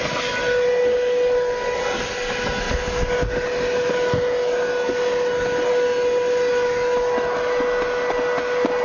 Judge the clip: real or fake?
real